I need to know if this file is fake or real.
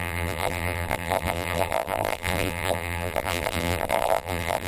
fake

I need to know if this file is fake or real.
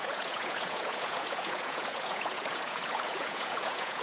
fake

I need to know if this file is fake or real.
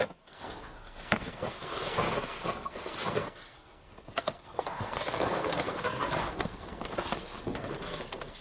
fake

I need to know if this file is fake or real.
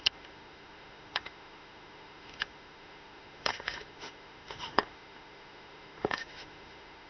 fake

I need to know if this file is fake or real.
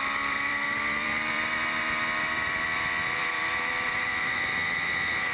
fake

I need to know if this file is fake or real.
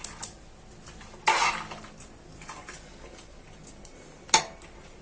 real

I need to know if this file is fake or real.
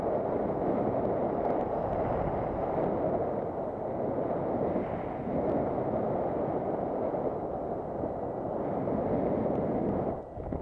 real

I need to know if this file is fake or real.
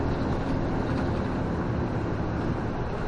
real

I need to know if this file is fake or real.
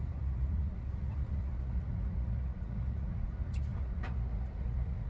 fake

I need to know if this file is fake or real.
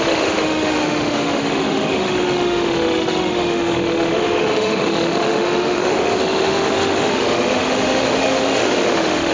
fake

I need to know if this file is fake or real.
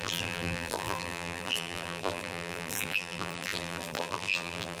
fake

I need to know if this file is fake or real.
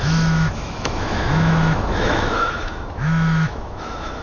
fake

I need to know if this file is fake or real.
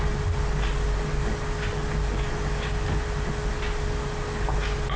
real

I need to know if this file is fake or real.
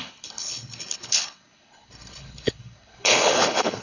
fake